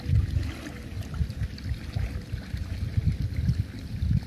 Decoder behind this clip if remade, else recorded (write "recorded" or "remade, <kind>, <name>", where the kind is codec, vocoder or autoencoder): recorded